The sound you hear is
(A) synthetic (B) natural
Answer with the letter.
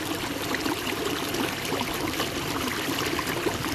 B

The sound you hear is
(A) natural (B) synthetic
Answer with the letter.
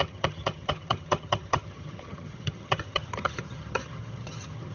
B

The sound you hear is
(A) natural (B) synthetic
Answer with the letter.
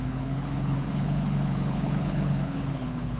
B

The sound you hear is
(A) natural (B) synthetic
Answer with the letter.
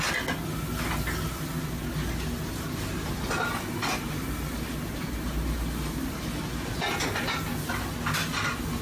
A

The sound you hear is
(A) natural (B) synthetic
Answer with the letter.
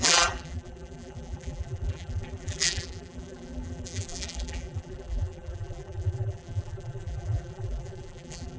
B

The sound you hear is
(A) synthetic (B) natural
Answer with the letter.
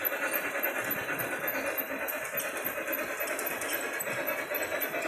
B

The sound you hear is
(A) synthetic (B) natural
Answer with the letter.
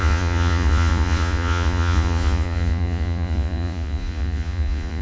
A